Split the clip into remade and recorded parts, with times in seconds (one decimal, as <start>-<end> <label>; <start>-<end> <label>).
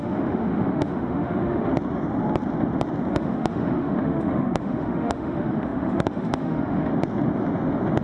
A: 0.0-1.7 remade; 1.7-3.1 recorded; 3.1-6.9 remade; 6.9-8.0 recorded